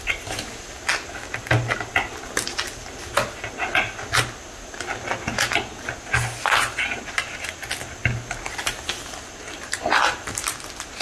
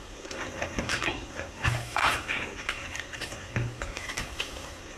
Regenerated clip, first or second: second